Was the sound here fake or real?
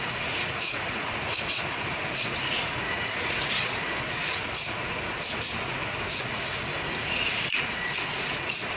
fake